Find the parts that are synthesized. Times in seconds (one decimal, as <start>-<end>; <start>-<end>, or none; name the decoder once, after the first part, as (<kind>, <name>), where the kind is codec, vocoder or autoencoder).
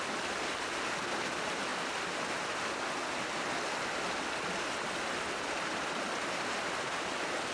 none